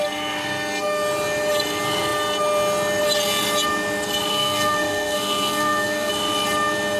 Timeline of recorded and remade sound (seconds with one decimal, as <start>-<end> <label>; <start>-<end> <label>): 0.0-4.3 recorded; 4.3-6.1 remade; 6.1-7.0 recorded